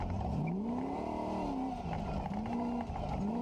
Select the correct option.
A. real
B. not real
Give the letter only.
A